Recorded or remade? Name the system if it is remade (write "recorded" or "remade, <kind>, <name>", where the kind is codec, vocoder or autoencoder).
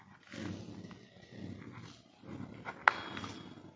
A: recorded